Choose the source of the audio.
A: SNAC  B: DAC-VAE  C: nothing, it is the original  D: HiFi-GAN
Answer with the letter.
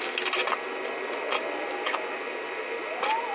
C